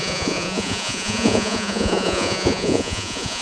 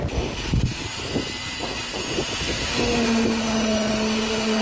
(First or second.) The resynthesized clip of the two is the first